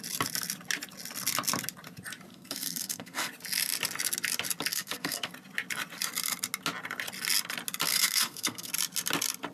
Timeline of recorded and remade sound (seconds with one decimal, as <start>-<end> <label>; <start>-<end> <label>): 0.0-2.3 recorded; 2.3-3.3 remade; 3.3-4.7 recorded; 4.7-5.3 remade; 5.3-7.9 recorded; 7.9-8.7 remade; 8.7-9.5 recorded